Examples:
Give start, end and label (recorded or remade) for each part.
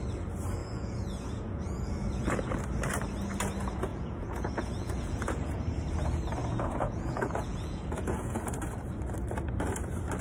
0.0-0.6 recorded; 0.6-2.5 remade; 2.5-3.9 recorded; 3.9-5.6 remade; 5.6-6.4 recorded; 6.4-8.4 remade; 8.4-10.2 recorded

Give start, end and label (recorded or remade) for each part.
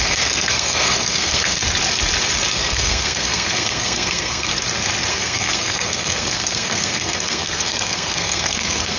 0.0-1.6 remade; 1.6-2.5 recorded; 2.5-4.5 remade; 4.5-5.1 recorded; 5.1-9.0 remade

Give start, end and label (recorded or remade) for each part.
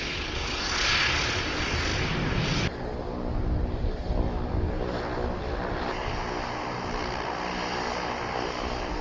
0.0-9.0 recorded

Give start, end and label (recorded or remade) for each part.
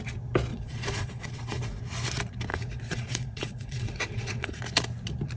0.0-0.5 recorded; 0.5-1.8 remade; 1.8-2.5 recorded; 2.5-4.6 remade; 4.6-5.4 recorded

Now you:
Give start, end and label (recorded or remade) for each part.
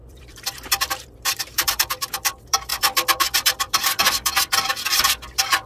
0.0-5.7 remade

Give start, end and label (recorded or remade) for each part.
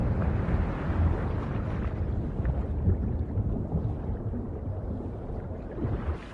0.0-6.3 recorded